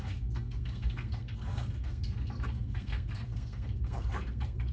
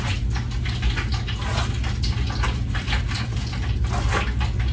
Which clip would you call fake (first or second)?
first